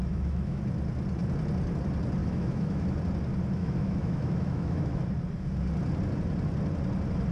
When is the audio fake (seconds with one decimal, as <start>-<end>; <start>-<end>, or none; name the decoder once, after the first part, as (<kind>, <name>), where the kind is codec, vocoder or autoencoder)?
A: 0.0-0.6 (autoencoder, DAC-VAE); 2.2-3.0; 3.6-5.0